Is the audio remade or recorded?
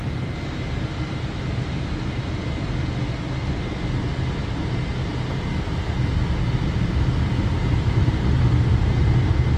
recorded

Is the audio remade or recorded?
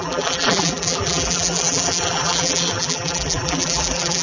remade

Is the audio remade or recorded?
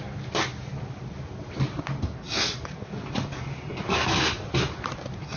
recorded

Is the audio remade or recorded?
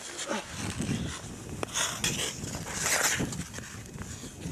recorded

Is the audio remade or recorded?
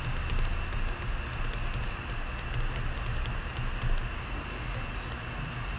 recorded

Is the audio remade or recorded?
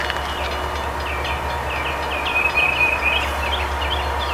remade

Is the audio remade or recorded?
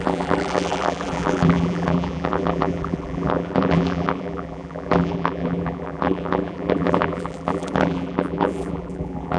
remade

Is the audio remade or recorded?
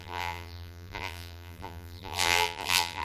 remade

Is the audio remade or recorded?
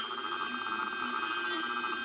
recorded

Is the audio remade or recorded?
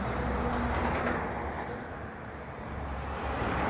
recorded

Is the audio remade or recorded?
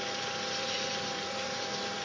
remade